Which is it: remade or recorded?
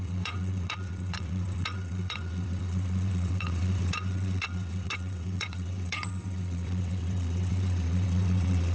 remade